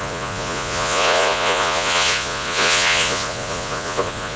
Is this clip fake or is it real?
fake